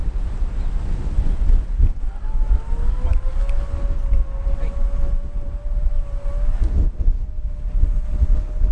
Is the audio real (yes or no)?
yes